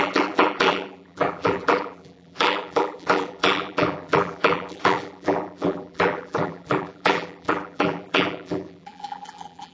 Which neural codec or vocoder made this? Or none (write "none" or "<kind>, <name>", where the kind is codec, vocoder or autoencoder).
vocoder, BigVGAN v2